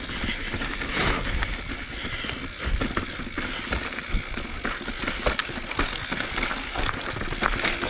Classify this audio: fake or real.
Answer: real